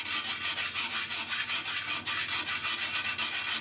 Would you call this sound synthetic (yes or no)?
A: no